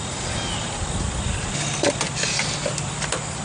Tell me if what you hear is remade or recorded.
recorded